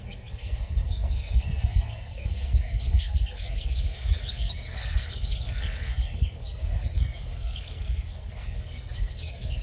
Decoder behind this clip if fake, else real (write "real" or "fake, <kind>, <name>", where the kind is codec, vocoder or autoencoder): fake, codec, SNAC